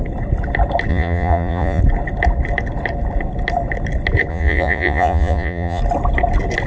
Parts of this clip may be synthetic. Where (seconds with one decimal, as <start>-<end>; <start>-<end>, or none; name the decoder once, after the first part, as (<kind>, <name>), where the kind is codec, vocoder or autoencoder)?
0.9-1.8 (vocoder, Vocos); 4.3-5.8

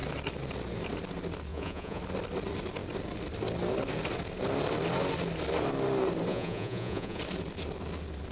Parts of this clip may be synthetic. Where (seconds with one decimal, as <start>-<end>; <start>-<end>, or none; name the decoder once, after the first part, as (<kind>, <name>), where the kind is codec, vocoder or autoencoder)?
1.5-2.0 (vocoder, Vocos); 6.3-7.2

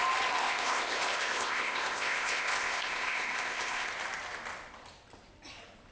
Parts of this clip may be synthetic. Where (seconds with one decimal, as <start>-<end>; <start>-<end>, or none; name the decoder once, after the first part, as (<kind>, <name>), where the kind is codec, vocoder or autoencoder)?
0.4-3.9 (codec, ZipCodec)